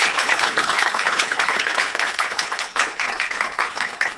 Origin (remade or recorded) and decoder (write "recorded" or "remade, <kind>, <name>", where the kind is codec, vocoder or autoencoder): remade, codec, HILCodec